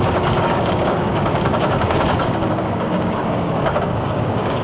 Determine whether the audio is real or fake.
fake